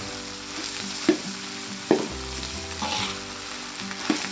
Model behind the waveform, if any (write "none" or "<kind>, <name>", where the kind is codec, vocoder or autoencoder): none